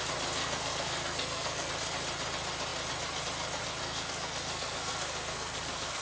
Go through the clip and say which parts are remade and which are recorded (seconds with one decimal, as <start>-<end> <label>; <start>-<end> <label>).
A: 0.0-0.4 recorded; 0.4-1.7 remade; 1.7-3.8 recorded; 3.8-6.0 remade